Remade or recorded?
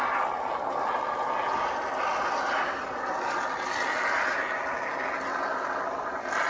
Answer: recorded